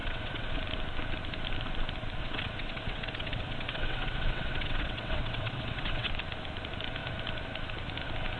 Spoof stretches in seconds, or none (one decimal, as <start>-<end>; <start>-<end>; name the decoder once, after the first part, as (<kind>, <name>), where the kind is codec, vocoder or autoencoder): 0.0-0.6 (vocoder, WaveNeXt); 2.2-6.1